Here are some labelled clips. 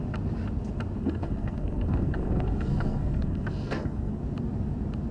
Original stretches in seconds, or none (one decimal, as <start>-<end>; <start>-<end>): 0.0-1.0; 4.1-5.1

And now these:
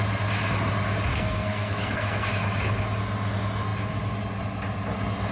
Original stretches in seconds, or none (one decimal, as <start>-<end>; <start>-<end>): 0.0-1.1; 2.3-5.3

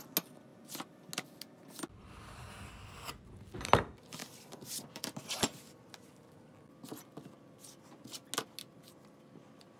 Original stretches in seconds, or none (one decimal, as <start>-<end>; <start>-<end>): 0.0-4.2; 5.9-9.8

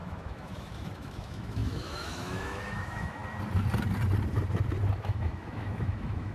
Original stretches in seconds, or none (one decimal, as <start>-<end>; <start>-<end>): 3.2-5.0

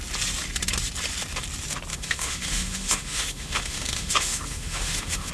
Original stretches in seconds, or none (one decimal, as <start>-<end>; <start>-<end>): 0.0-1.9

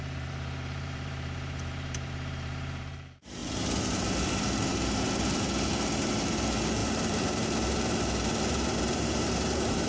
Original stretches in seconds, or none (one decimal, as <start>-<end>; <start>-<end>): none